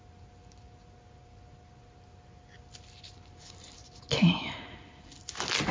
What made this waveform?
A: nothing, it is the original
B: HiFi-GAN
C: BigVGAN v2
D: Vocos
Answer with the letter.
A